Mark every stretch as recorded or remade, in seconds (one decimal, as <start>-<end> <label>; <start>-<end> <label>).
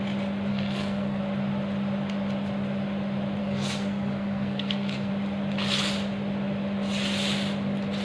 0.0-0.5 recorded; 0.5-1.2 remade; 1.2-3.4 recorded; 3.4-5.1 remade; 5.1-8.0 recorded